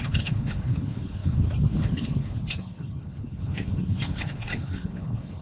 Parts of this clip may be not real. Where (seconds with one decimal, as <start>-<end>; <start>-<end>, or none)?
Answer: 0.0-5.4